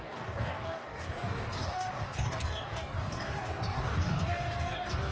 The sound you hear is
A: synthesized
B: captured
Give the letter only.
A